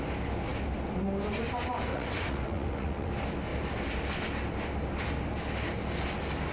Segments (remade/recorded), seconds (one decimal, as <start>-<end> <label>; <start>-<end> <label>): 0.0-1.9 recorded; 1.9-3.1 remade; 3.1-6.5 recorded